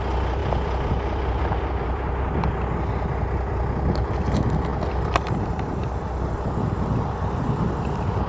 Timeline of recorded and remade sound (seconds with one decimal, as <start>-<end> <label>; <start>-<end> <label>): 0.0-0.4 recorded; 0.4-2.5 remade; 2.5-4.7 recorded; 4.7-6.2 remade; 6.2-8.3 recorded